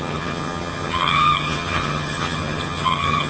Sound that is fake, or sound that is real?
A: fake